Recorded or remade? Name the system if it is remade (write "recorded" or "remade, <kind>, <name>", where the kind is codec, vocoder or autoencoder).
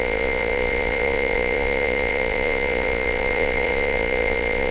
remade, vocoder, Vocos